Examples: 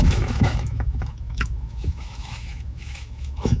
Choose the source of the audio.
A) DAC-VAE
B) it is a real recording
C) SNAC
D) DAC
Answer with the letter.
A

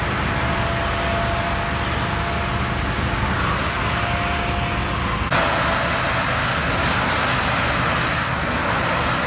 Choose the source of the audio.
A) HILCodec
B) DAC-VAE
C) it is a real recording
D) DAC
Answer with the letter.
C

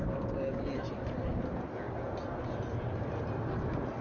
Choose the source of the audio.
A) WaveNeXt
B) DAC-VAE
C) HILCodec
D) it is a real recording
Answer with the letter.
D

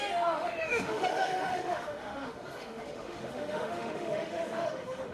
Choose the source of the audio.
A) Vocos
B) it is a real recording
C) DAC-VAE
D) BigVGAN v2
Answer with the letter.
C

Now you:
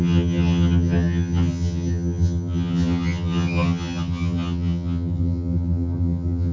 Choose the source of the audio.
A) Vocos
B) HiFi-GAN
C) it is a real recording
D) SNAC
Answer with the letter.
B